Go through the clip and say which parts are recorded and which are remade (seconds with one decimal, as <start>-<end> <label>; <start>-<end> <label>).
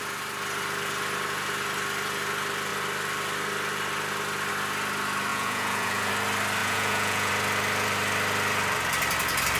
0.0-5.3 recorded; 5.3-6.1 remade; 6.1-6.6 recorded; 6.6-7.3 remade; 7.3-9.6 recorded